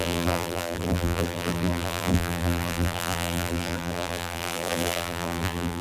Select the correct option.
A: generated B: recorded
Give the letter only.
A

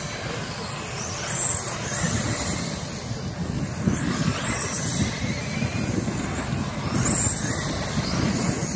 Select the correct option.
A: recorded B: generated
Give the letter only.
A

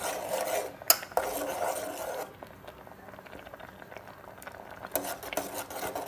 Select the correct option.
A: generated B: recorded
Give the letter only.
B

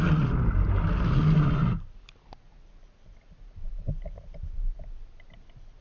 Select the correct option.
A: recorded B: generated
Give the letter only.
A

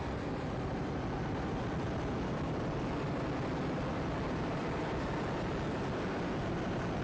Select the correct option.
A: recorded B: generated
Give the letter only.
A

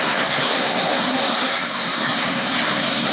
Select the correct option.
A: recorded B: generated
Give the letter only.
B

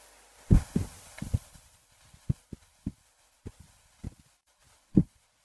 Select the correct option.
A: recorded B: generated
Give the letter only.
B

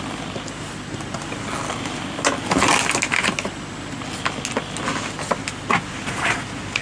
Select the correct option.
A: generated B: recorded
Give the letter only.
B